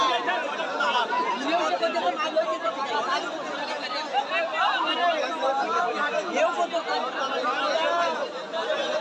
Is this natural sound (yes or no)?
yes